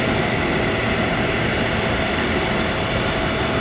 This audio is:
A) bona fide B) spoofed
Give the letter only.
A